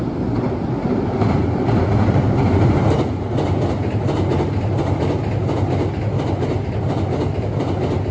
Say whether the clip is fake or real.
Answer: real